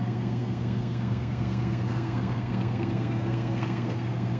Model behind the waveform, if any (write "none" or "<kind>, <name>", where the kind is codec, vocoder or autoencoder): codec, SNAC